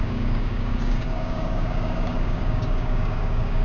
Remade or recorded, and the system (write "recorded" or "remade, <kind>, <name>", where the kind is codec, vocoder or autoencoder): remade, codec, DAC